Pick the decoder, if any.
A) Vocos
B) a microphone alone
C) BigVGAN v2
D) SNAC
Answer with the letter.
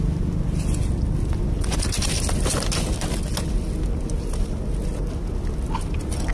B